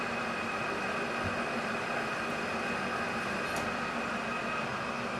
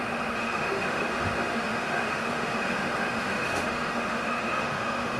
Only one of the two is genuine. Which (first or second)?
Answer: first